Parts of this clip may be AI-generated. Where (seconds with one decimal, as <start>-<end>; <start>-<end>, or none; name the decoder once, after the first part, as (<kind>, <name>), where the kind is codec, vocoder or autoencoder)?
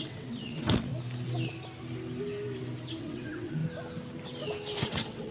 0.0-0.9 (vocoder, WaveNeXt); 3.0-3.6; 4.8-5.3